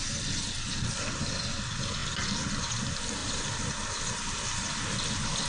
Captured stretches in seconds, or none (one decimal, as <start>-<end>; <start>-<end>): 0.0-5.5